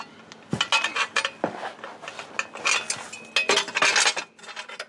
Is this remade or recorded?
recorded